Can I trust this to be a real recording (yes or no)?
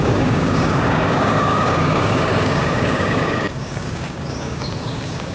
no